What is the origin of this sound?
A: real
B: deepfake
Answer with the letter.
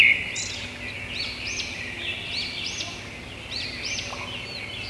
A